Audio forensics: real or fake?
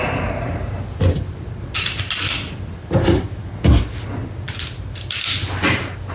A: real